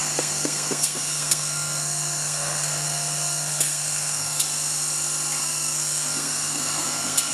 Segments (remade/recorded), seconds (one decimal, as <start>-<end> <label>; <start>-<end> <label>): 0.0-4.4 remade; 4.4-5.4 recorded; 5.4-7.3 remade

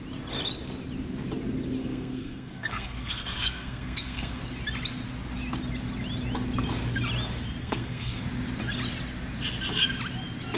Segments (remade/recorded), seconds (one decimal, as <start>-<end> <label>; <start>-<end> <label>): 0.0-1.8 recorded; 1.8-4.4 remade; 4.4-7.6 recorded; 7.6-8.2 remade; 8.2-10.6 recorded

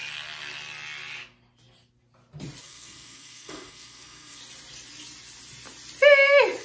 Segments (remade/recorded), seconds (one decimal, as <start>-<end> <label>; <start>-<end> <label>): 0.0-2.6 recorded; 2.6-4.4 remade; 4.4-6.6 recorded

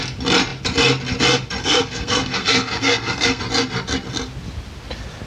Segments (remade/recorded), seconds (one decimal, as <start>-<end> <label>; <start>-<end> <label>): 0.0-1.6 recorded; 1.6-3.4 remade; 3.4-5.3 recorded

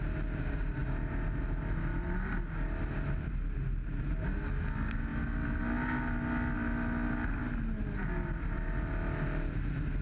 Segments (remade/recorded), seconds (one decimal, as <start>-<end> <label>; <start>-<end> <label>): 0.0-10.0 recorded

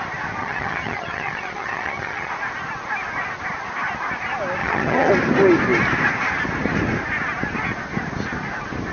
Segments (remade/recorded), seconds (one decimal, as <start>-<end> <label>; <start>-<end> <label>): 0.0-0.4 recorded; 0.4-2.3 remade; 2.3-4.6 recorded; 4.6-5.1 remade; 5.1-8.9 recorded

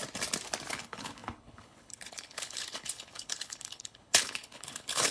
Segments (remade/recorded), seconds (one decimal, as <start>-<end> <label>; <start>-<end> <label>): 0.0-0.7 recorded; 0.7-5.1 remade

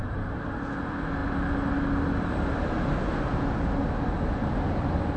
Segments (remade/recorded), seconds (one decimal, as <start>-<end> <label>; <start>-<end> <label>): 0.0-5.2 recorded